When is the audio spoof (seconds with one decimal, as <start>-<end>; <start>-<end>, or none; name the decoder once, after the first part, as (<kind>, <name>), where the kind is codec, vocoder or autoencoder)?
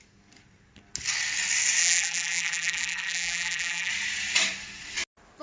1.8-3.9 (vocoder, BigVGAN v2)